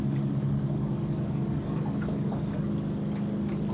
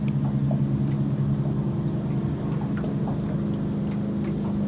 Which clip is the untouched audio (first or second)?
second